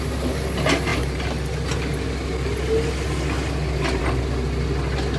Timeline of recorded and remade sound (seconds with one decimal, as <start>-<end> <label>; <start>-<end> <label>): 0.0-5.2 recorded